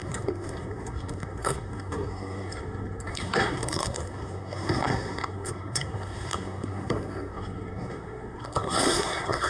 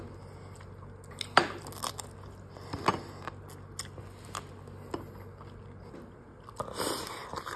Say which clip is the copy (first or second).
first